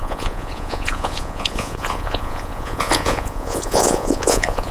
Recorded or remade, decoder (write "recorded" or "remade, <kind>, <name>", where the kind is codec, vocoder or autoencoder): remade, vocoder, Vocos